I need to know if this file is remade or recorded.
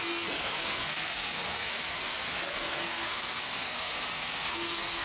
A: remade